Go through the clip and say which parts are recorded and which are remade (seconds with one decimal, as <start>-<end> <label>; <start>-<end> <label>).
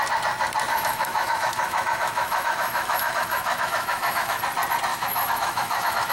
0.0-0.7 recorded; 0.7-4.4 remade; 4.4-4.9 recorded; 4.9-6.1 remade